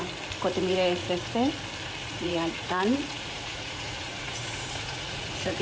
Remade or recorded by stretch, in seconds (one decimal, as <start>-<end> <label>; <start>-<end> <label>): 0.0-1.0 recorded; 1.0-1.5 remade; 1.5-2.0 recorded; 2.0-5.6 remade